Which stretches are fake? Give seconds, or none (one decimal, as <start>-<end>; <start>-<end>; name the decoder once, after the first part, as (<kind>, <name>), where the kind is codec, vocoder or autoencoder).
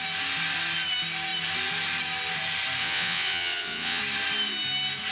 2.8-4.0 (vocoder, WaveNeXt)